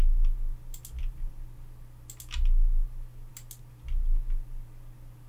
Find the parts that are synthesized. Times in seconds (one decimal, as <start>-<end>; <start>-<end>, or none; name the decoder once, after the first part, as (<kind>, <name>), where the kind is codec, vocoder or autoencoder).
none